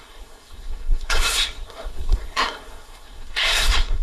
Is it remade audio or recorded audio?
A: remade